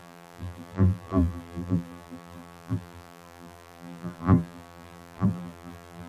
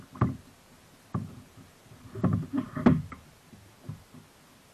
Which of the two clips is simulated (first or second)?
first